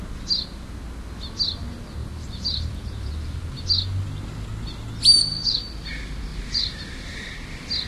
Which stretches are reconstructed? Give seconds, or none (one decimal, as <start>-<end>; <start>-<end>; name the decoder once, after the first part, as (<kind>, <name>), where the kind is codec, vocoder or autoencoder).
2.0-3.6 (vocoder, BigVGAN v2); 6.3-7.3